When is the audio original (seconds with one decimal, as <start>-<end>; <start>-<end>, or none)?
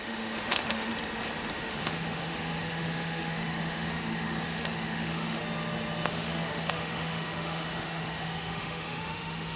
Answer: 0.9-1.5; 5.4-6.1